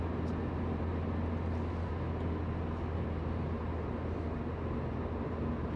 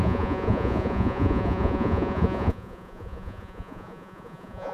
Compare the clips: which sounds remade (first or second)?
second